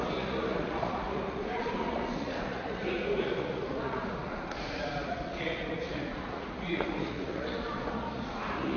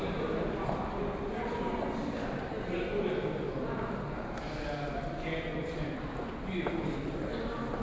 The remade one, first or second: first